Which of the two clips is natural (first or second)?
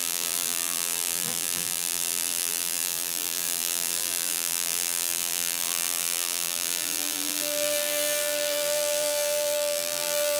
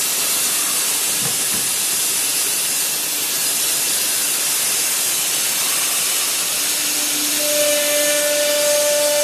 second